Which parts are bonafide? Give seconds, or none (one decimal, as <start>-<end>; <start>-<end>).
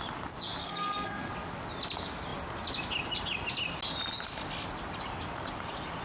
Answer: 0.0-0.6; 1.3-6.0